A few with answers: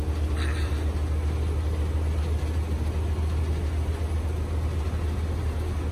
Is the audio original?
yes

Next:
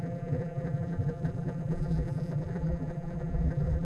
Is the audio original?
no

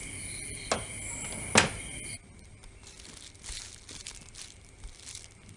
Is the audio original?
yes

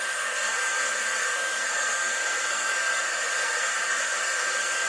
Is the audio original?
no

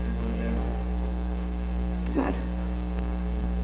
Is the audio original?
no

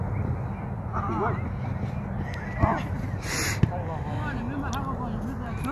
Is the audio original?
yes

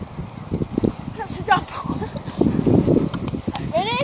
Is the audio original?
yes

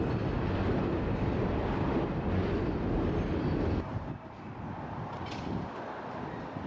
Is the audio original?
yes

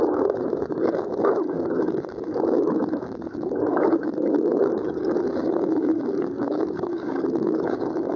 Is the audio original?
no